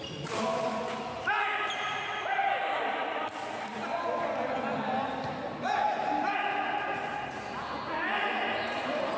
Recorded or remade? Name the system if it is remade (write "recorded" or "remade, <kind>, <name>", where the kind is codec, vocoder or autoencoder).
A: recorded